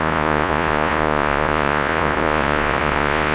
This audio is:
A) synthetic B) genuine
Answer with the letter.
A